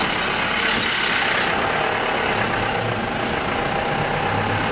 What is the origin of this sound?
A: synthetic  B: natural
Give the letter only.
B